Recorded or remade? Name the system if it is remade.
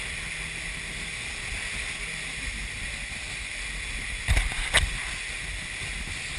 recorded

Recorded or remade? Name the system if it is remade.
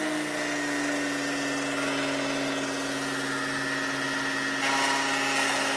recorded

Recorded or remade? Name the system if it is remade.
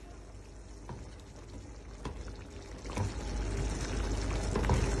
recorded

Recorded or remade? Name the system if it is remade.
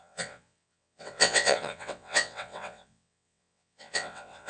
remade, vocoder, WaveNeXt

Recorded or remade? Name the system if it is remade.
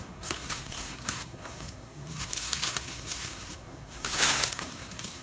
remade, codec, SNAC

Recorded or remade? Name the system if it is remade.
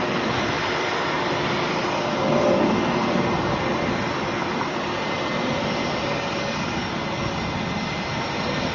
recorded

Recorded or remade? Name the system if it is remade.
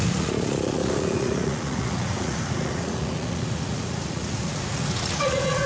remade, vocoder, Vocos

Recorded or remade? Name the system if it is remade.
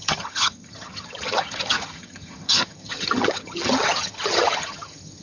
remade, vocoder, HiFi-GAN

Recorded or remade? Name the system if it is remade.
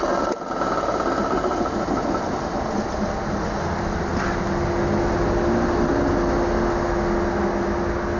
recorded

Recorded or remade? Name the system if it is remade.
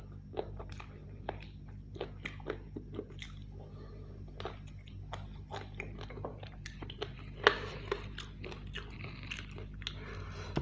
recorded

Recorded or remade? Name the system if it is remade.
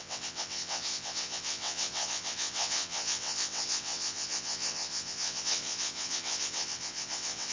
remade, vocoder, WaveNeXt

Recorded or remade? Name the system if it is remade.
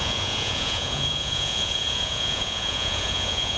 remade, vocoder, Vocos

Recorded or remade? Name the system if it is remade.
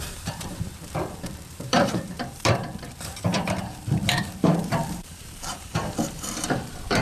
remade, vocoder, BigVGAN v2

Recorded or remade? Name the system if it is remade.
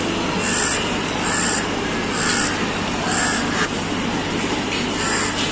recorded